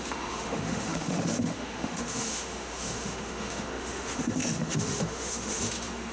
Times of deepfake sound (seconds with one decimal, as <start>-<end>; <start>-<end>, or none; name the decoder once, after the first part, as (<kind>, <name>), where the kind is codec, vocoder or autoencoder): 0.0-6.1 (autoencoder, DAC-VAE)

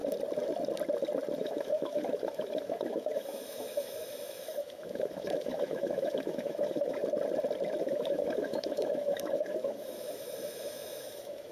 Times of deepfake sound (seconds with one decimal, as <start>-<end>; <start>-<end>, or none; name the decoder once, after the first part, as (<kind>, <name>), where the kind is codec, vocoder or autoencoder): 1.4-7.0 (autoencoder, DAC-VAE); 7.8-11.5

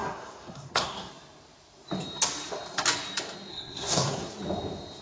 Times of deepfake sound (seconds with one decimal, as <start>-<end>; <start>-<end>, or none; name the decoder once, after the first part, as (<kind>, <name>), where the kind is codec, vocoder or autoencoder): 0.0-1.1 (codec, SNAC); 3.5-4.3